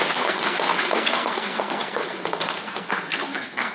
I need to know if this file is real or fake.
fake